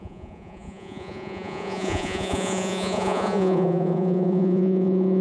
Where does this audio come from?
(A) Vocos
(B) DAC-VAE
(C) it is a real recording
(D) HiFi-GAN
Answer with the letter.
A